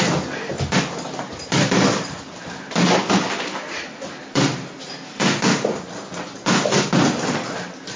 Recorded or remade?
recorded